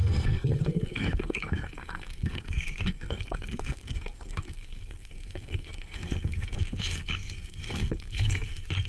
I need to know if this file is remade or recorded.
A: remade